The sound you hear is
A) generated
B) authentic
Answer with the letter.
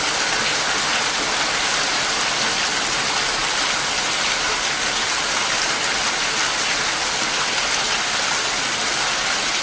B